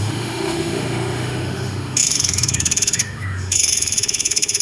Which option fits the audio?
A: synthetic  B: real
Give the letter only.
A